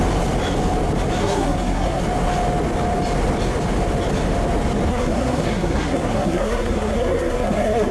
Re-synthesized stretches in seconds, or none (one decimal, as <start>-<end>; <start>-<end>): 1.2-2.0; 4.9-7.9

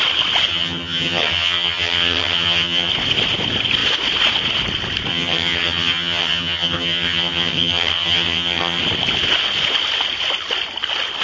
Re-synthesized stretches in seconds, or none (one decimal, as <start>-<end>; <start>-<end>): 0.5-2.9; 5.1-8.8

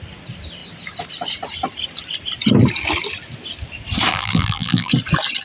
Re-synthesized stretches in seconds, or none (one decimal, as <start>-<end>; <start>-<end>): 4.1-4.9

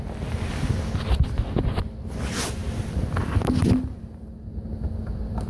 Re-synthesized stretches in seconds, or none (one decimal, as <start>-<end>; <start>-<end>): none

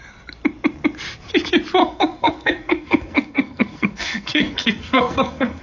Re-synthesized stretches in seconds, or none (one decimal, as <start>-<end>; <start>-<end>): 1.8-5.6

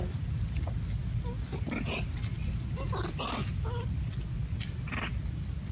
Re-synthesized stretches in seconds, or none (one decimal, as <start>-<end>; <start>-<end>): none

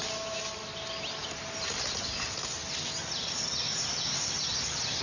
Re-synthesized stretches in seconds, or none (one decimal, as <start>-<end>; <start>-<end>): none